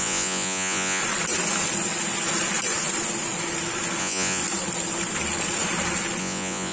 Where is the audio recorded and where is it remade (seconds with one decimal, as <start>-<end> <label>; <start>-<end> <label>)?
0.0-1.0 remade; 1.0-4.0 recorded; 4.0-4.4 remade; 4.4-6.2 recorded; 6.2-6.7 remade